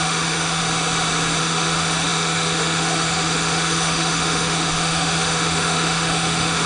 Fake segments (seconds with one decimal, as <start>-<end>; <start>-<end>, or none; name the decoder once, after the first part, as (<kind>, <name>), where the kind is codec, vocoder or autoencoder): 0.0-0.6 (autoencoder, DAC-VAE); 1.4-6.7